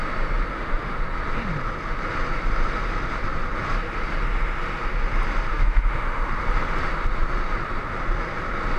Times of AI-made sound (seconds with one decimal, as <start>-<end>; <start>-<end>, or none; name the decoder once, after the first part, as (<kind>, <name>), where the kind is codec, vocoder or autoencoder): 0.5-1.0 (autoencoder, DAC-VAE); 5.5-6.4